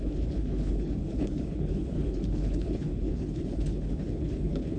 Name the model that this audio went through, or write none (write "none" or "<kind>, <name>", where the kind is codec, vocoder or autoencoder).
codec, HILCodec